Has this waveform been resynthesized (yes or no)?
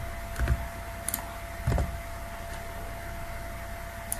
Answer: no